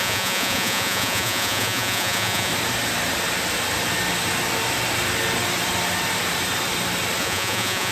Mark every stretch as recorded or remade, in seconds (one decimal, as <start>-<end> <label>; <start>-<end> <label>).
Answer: 0.0-2.5 remade; 2.5-7.2 recorded; 7.2-7.9 remade